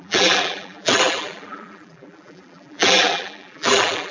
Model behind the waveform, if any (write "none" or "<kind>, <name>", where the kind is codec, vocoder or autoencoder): vocoder, BigVGAN v2